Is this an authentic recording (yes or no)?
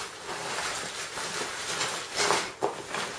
yes